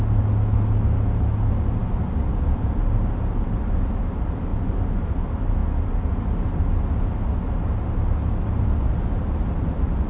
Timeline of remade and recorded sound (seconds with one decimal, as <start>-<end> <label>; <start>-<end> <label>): 0.0-10.1 recorded